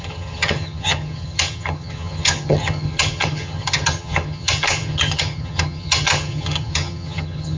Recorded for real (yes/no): no